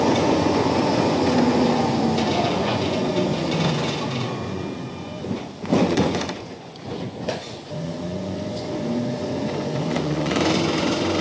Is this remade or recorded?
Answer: remade